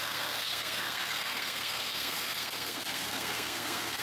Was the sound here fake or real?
fake